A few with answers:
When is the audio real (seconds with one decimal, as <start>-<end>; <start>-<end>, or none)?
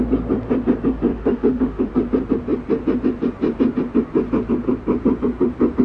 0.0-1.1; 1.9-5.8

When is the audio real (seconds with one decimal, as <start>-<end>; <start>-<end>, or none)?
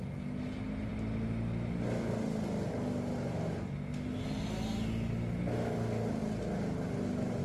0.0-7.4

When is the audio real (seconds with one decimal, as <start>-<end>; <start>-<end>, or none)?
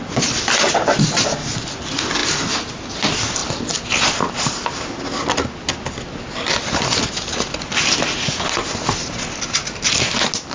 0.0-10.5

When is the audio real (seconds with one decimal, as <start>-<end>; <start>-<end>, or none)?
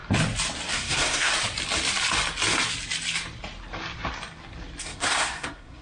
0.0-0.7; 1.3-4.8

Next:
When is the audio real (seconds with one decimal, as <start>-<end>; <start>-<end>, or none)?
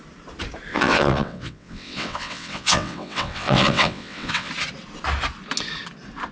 0.0-0.7; 4.5-6.3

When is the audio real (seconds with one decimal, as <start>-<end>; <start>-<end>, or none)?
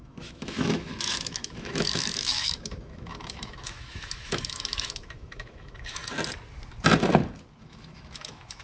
6.0-7.6